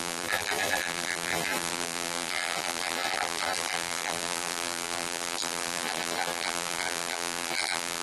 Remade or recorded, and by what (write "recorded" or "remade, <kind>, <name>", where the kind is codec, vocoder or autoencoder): remade, vocoder, BigVGAN v2